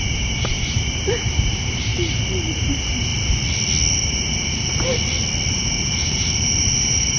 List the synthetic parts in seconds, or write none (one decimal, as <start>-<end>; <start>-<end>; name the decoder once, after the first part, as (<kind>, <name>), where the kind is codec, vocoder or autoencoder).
0.0-1.9 (vocoder, BigVGAN v2); 2.5-3.1; 3.9-4.9; 5.5-7.2